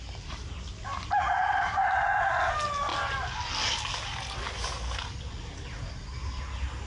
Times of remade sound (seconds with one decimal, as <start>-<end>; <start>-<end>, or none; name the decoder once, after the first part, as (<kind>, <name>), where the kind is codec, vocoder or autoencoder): none